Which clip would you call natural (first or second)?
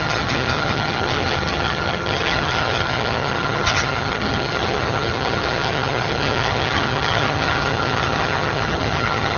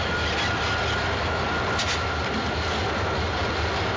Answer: second